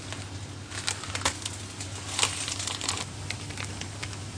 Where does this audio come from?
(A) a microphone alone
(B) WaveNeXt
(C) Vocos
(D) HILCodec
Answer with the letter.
A